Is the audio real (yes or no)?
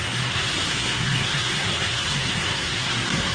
no